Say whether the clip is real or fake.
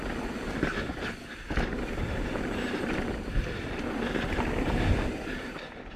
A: real